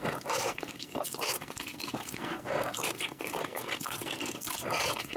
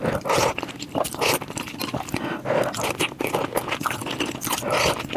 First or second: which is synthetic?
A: first